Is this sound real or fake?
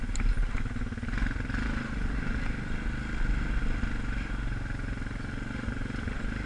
real